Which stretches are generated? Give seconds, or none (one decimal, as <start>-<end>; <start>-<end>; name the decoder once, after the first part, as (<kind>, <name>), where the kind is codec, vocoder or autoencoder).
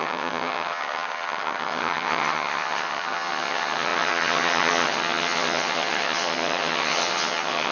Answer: 0.0-7.7 (vocoder, HiFi-GAN)